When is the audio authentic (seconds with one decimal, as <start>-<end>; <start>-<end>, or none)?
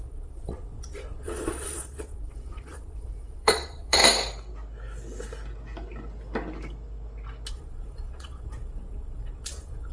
4.0-7.5